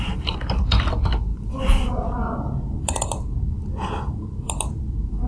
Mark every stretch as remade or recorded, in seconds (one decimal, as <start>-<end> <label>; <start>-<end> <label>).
0.0-5.3 remade